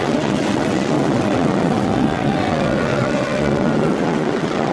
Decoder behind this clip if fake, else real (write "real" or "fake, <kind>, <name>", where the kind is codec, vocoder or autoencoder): fake, vocoder, WaveNeXt